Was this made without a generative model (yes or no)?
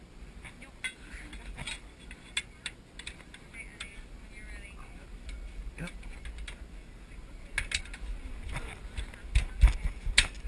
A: yes